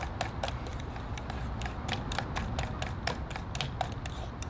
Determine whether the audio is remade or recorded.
recorded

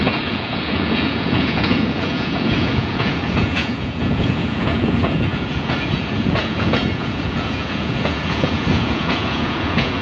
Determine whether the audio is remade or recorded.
remade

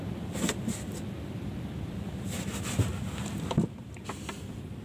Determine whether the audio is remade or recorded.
recorded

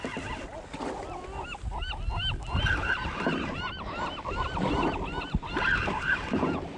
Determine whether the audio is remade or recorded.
recorded